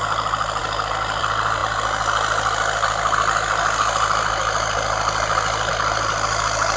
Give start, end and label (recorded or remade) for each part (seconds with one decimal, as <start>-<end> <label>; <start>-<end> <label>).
0.0-0.6 recorded; 0.6-1.2 remade; 1.2-6.8 recorded